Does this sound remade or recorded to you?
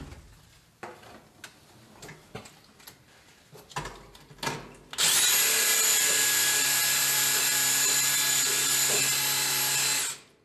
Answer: recorded